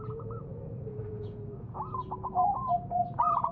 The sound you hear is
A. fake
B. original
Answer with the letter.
A